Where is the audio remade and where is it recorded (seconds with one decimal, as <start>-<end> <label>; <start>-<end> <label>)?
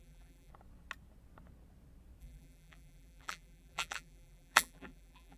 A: 0.0-0.5 remade; 0.5-2.2 recorded; 2.2-5.4 remade